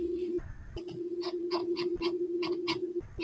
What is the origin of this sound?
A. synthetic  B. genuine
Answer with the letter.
A